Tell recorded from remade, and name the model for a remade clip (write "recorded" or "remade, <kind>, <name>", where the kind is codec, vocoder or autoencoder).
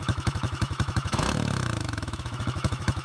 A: remade, autoencoder, DAC-VAE